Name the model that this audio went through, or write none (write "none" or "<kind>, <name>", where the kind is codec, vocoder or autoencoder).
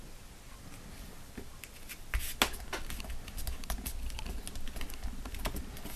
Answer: none